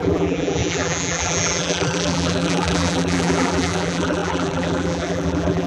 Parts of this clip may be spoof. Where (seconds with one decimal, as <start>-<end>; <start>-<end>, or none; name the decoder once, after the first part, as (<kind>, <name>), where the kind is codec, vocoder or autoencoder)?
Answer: 0.0-5.7 (vocoder, BigVGAN v2)